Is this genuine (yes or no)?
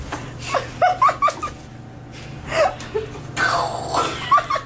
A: yes